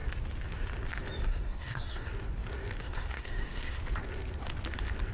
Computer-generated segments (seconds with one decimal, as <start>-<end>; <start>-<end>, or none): 1.3-2.1; 2.8-3.8